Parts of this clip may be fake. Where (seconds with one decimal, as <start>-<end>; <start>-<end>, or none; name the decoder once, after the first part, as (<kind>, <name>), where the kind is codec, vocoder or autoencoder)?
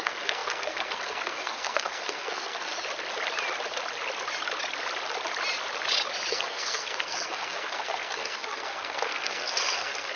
0.0-2.7 (codec, SNAC); 6.3-10.2